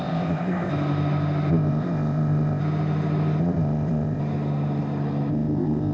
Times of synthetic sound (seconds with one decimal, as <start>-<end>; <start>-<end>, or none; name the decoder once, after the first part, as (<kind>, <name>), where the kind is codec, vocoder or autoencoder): 0.0-0.7 (codec, ZipCodec); 1.5-2.6; 3.4-4.2; 5.3-5.9